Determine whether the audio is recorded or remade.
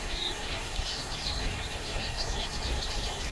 remade